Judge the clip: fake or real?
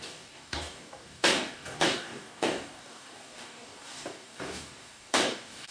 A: fake